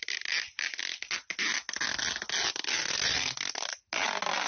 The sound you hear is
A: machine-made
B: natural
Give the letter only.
B